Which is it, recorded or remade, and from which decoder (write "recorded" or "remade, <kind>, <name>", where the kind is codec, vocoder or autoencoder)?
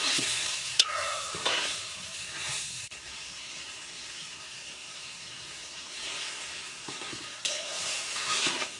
remade, codec, SNAC